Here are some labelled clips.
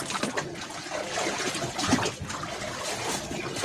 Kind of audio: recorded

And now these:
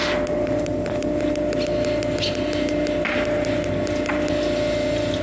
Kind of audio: recorded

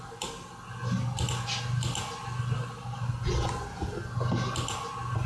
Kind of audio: recorded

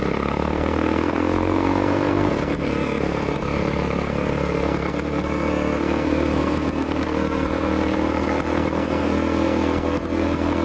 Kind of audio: remade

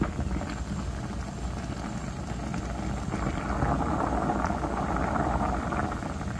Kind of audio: recorded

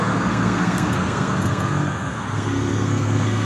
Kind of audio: remade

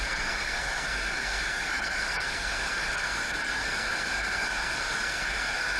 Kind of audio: remade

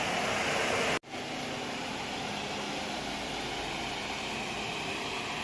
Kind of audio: recorded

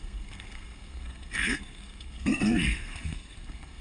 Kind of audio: remade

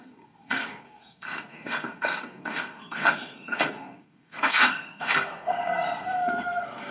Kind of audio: remade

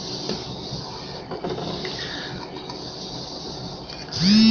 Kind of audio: recorded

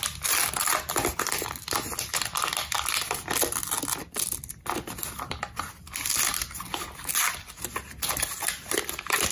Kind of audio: recorded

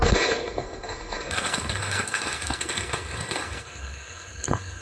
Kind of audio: remade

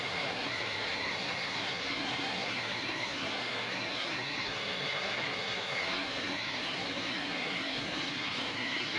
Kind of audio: remade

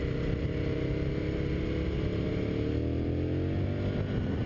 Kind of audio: recorded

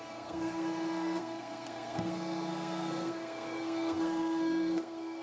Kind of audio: remade